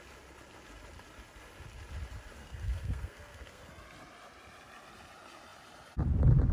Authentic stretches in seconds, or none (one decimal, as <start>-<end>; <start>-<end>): 0.0-2.4; 3.7-6.5